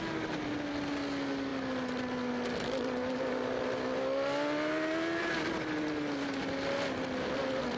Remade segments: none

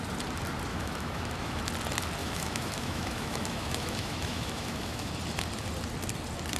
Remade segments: 0.7-1.6; 2.2-5.1

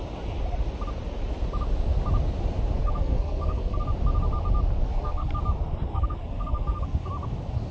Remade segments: 2.8-3.8; 4.8-5.4; 5.9-7.1